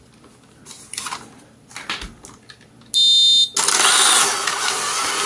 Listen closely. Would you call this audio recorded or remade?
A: recorded